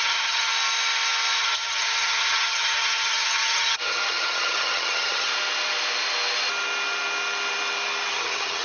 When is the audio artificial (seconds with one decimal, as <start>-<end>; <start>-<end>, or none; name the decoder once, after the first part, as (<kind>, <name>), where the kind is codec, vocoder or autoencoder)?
0.0-0.5 (vocoder, HiFi-GAN); 1.4-5.3; 8.1-8.6